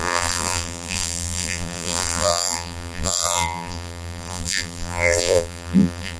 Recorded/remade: remade